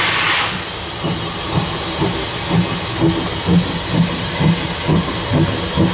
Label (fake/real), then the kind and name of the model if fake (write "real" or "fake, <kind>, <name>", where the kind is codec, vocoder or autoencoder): real